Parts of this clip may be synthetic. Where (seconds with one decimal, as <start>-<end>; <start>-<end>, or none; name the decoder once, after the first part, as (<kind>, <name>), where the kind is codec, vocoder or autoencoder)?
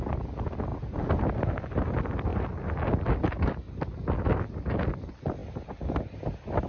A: 0.7-1.6 (vocoder, BigVGAN v2)